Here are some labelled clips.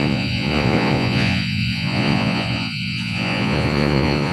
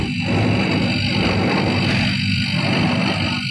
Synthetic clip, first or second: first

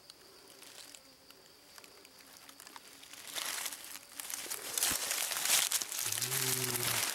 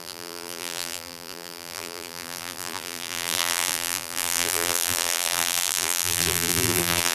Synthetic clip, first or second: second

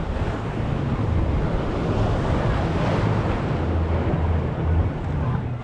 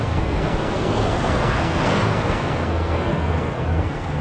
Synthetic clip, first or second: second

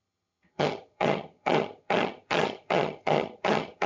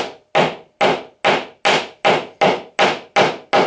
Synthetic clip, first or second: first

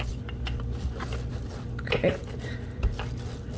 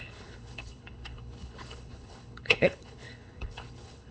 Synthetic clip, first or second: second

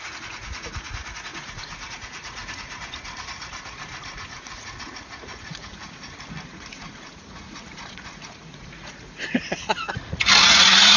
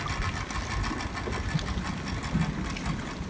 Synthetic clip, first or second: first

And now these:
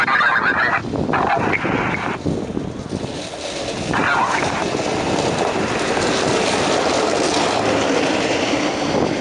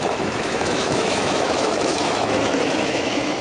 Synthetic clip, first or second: second